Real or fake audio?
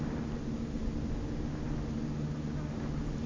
real